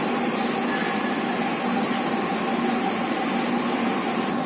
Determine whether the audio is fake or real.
real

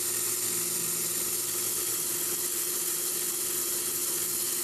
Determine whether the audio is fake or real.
real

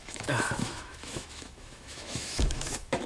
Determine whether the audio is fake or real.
fake